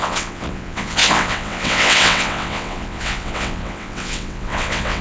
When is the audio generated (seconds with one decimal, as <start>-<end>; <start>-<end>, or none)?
0.0-5.0